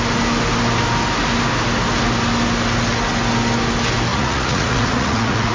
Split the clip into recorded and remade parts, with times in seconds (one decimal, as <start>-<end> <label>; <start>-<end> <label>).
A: 0.0-4.1 recorded; 4.1-5.5 remade